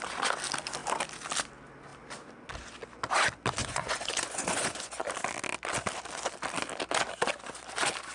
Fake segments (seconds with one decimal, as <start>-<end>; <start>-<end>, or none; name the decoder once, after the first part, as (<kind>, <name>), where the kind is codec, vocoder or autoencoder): 3.6-5.1 (vocoder, Vocos)